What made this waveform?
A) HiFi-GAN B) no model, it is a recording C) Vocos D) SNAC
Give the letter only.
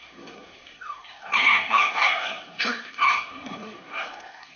D